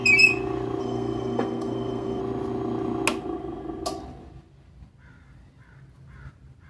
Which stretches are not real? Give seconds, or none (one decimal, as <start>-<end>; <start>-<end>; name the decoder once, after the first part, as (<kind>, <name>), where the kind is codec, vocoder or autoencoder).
0.8-2.2 (codec, SNAC)